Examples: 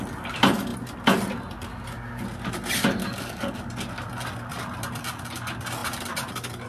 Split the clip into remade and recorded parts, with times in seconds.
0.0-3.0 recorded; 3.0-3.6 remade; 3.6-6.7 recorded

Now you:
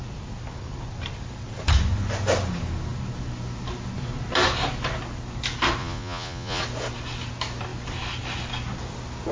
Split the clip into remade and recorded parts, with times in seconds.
0.0-5.8 recorded; 5.8-6.6 remade; 6.6-9.3 recorded

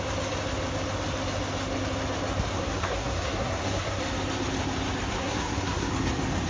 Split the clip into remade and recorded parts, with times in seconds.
0.0-2.5 recorded; 2.5-4.0 remade; 4.0-5.1 recorded; 5.1-5.9 remade; 5.9-6.5 recorded

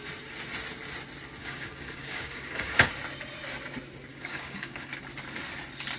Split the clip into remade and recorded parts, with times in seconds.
0.0-1.4 recorded; 1.4-2.9 remade; 2.9-4.1 recorded; 4.1-4.9 remade; 4.9-6.0 recorded